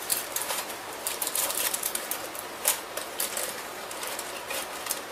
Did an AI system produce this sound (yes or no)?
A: yes